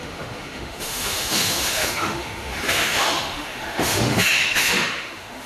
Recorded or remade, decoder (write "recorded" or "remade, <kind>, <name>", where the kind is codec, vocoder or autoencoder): remade, autoencoder, DAC-VAE